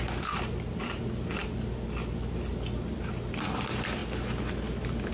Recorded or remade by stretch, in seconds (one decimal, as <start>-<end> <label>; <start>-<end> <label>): 0.0-5.1 recorded